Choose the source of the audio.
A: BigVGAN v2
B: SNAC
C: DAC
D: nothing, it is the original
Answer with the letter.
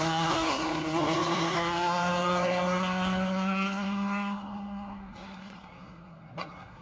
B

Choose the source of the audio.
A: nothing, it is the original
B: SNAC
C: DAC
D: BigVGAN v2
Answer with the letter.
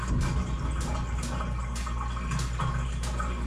A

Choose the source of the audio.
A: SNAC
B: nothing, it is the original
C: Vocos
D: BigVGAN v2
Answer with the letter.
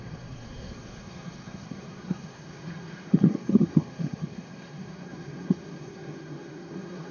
A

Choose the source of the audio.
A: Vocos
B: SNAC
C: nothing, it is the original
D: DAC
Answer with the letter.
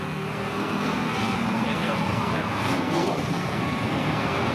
B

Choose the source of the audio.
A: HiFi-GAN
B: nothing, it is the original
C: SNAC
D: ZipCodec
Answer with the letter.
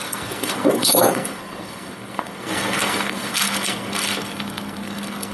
C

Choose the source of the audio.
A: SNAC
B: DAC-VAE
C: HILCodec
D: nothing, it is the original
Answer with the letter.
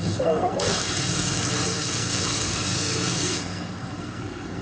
A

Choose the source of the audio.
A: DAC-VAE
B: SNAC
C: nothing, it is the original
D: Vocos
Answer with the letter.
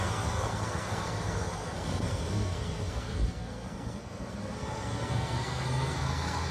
B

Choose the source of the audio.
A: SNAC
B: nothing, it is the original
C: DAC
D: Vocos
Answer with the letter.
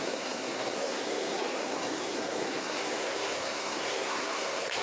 A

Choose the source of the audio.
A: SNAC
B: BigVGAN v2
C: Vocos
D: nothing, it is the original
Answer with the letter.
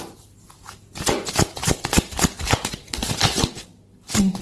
D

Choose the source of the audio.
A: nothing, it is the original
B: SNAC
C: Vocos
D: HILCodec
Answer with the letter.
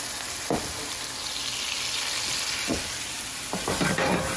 A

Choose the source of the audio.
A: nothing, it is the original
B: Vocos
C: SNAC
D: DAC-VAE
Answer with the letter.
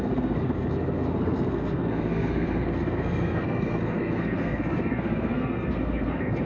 C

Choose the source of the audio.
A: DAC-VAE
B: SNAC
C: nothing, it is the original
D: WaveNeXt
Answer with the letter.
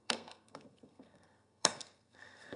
B